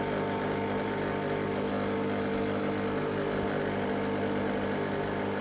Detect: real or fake real